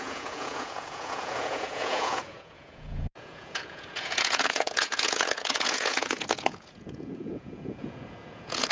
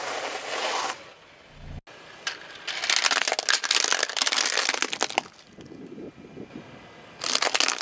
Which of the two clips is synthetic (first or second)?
first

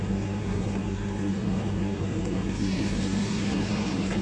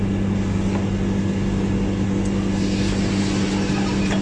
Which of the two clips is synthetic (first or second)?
first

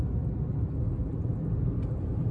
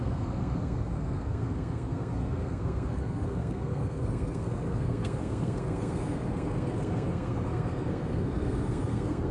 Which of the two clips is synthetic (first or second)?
second